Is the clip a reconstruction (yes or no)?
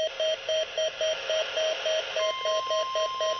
no